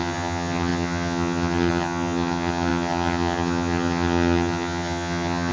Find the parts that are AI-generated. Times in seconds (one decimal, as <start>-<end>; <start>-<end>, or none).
0.0-5.5